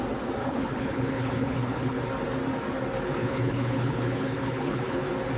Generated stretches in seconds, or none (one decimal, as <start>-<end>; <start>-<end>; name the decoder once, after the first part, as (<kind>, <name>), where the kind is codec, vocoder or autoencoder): 0.4-2.0 (codec, HILCodec); 3.2-5.0